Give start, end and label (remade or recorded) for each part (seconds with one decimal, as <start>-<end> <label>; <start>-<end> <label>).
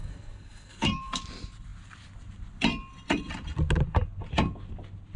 0.0-1.2 remade; 1.2-5.2 recorded